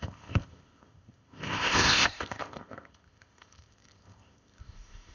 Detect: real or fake fake